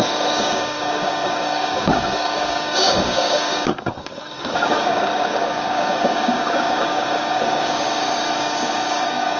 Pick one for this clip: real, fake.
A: fake